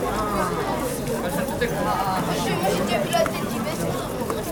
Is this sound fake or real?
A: real